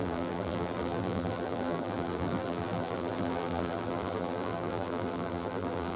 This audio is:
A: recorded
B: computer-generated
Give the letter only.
B